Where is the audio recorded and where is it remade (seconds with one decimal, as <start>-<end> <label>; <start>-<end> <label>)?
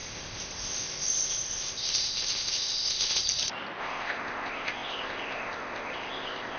0.0-3.2 remade; 3.2-3.8 recorded; 3.8-6.6 remade